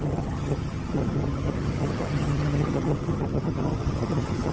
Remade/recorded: remade